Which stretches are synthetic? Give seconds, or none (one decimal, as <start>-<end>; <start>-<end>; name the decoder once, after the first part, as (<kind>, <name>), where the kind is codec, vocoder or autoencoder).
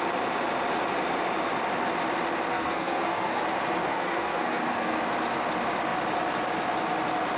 2.5-3.4 (codec, SNAC); 3.8-5.0